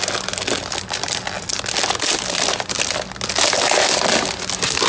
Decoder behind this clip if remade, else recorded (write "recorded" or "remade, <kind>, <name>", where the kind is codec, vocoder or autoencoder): recorded